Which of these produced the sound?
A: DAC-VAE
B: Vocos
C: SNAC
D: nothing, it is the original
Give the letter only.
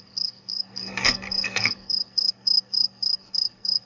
C